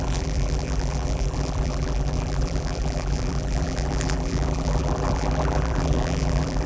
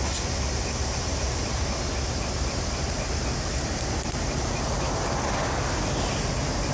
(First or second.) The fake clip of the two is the first